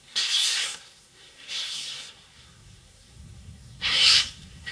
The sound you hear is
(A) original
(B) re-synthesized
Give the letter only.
B